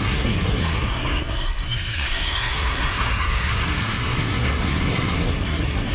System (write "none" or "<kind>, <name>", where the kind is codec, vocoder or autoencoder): codec, SNAC